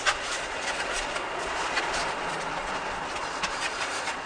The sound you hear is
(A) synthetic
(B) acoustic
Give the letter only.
A